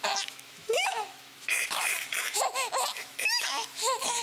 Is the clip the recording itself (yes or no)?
no